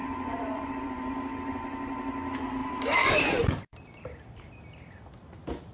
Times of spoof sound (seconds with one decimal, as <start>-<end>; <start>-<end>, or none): 0.0-1.1; 2.6-4.5

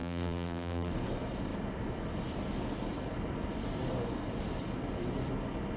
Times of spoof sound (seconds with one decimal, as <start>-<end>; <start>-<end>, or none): 0.0-0.9